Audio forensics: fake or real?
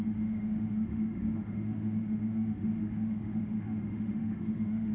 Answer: fake